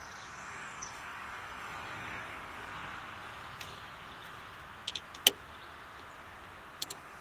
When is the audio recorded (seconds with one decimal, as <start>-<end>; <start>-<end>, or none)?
2.7-6.8